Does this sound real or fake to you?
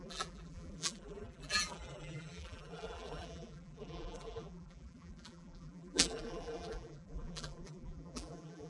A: fake